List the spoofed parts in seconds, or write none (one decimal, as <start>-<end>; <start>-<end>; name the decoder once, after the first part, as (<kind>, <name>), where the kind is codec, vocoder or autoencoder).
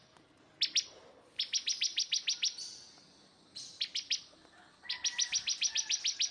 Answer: none